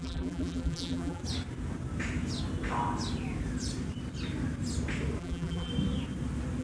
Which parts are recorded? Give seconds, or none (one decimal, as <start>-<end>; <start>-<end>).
1.2-5.2; 5.7-6.6